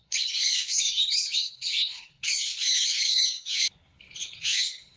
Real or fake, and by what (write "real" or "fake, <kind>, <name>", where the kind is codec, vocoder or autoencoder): fake, codec, HILCodec